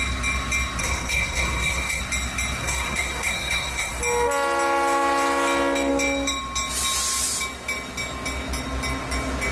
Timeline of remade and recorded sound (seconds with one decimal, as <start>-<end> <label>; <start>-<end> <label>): 0.0-0.8 recorded; 0.8-2.0 remade; 2.0-2.6 recorded; 2.6-4.0 remade; 4.0-9.5 recorded